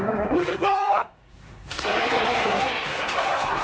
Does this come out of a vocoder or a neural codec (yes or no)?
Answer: yes